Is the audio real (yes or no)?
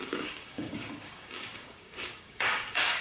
no